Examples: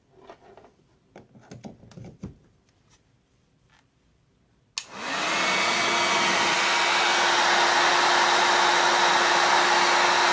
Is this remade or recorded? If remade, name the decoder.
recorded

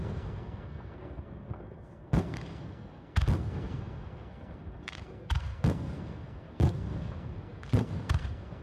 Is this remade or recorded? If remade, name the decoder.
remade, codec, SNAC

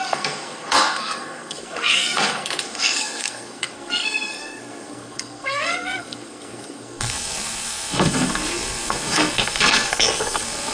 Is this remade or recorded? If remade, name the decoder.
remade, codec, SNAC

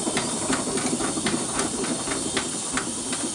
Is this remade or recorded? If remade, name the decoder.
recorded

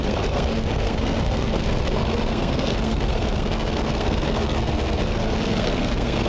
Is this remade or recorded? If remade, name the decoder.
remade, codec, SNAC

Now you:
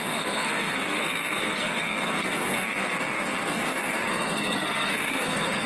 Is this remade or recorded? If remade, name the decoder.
remade, codec, SNAC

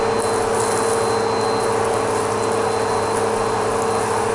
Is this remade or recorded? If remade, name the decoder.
recorded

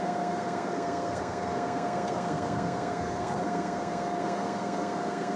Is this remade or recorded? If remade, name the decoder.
remade, codec, SNAC